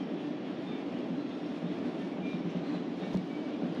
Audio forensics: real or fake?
real